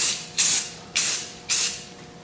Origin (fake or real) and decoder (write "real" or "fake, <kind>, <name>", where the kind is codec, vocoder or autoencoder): real